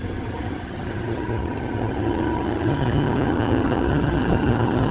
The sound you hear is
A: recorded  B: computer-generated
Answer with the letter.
B